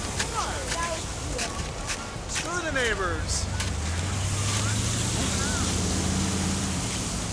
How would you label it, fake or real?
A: real